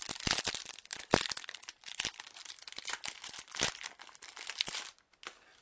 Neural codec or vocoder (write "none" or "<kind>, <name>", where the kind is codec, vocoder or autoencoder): none